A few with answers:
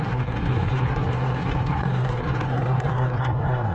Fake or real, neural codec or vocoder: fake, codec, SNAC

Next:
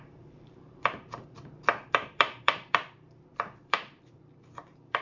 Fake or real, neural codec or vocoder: fake, vocoder, BigVGAN v2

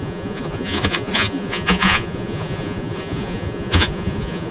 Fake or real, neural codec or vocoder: fake, vocoder, Vocos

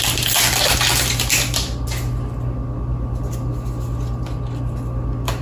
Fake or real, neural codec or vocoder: real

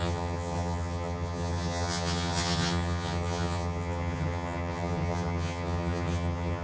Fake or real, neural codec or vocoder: fake, vocoder, HiFi-GAN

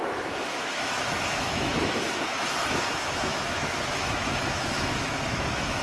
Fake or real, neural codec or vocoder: fake, autoencoder, DAC-VAE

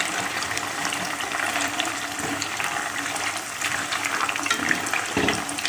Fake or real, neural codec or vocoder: fake, vocoder, BigVGAN v2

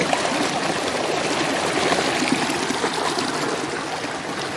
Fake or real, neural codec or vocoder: real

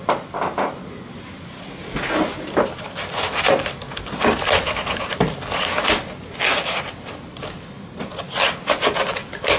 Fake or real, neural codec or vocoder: real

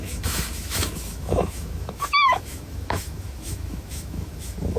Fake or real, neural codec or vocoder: fake, autoencoder, DAC-VAE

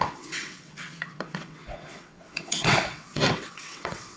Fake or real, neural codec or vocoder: fake, vocoder, WaveNeXt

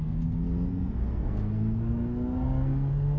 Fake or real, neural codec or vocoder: fake, codec, SNAC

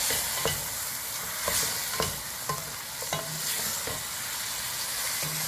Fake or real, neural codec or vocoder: real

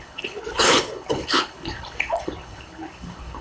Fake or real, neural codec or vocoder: fake, codec, HILCodec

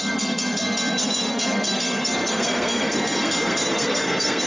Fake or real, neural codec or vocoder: fake, codec, SNAC